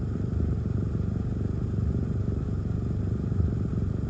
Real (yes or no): yes